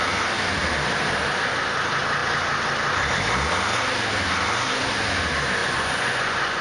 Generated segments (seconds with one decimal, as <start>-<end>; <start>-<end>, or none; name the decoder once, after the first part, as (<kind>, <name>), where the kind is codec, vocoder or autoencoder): 5.6-6.6 (vocoder, Vocos)